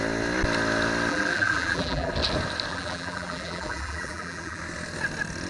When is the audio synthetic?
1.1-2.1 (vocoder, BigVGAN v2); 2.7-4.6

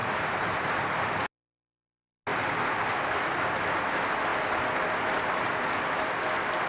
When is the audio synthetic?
0.0-1.1 (vocoder, BigVGAN v2); 2.3-2.9; 4.3-6.7

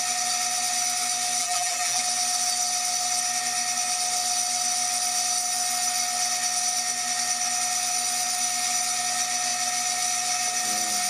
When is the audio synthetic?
1.4-2.0 (vocoder, BigVGAN v2)

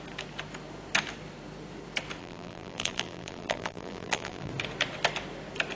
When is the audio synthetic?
2.2-4.5 (vocoder, BigVGAN v2)

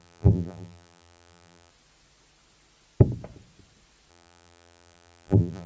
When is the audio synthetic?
0.0-1.7 (vocoder, BigVGAN v2); 4.1-5.7

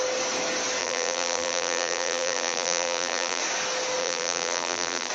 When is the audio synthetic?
0.8-3.4 (vocoder, BigVGAN v2); 4.0-5.1